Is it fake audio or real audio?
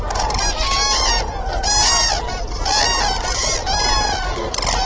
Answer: real